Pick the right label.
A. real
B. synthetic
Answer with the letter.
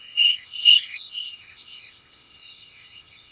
B